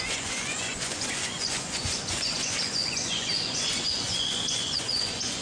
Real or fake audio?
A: fake